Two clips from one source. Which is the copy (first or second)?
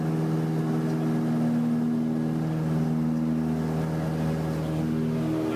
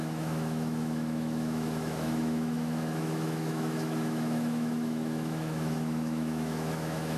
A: second